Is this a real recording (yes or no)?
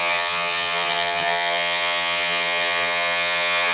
no